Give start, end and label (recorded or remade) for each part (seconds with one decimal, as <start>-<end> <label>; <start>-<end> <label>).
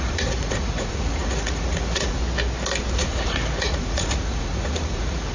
0.0-2.2 remade; 2.2-2.9 recorded; 2.9-5.3 remade